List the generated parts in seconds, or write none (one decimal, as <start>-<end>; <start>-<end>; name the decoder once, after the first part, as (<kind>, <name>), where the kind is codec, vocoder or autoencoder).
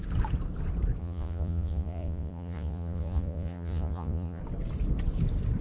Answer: 1.0-4.4 (vocoder, Vocos)